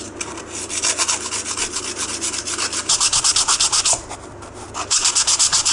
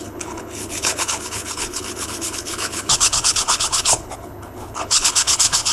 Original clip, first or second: first